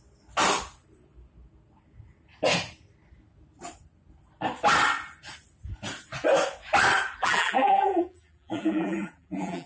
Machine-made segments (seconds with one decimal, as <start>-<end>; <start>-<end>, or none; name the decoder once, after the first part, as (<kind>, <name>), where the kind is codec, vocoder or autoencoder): 7.2-9.7 (vocoder, BigVGAN v2)